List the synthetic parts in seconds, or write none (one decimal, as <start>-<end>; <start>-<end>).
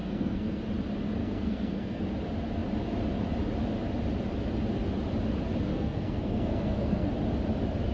0.0-0.6; 1.2-2.0; 5.7-7.1